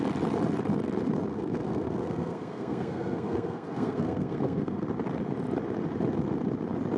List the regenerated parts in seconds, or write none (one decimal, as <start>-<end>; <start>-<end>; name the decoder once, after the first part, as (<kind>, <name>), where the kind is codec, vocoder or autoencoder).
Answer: 1.3-4.8 (codec, SNAC)